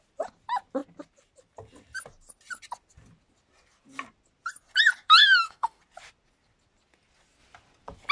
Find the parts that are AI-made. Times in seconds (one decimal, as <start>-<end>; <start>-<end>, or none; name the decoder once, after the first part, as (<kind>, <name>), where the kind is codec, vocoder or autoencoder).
5.2-5.8 (autoencoder, DAC-VAE)